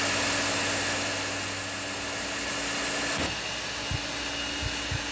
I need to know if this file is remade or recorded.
recorded